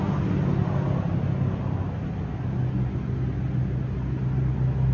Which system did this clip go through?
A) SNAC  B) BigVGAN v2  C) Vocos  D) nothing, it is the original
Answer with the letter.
D